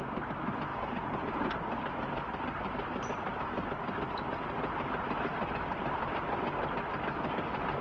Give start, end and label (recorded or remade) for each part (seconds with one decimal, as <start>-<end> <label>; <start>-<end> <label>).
0.0-0.7 recorded; 0.7-1.5 remade; 1.5-7.8 recorded